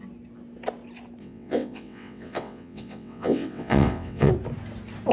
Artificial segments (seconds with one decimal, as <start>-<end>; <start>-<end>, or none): 1.2-4.3